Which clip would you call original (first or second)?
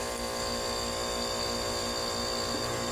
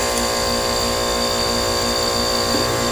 first